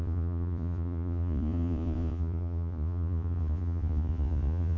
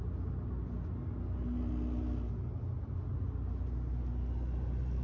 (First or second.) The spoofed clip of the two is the first